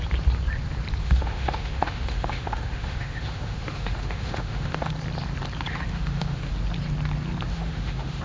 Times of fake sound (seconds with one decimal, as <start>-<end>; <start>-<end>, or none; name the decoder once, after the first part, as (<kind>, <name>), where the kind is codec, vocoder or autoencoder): 1.0-4.9 (autoencoder, DAC-VAE); 5.7-6.5; 7.5-8.2